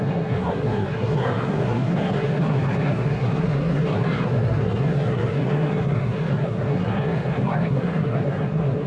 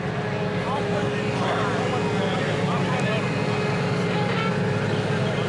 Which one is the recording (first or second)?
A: second